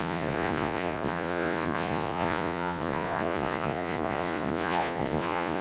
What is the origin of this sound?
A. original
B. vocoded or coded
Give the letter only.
B